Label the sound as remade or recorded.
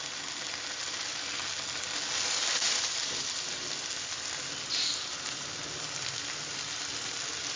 recorded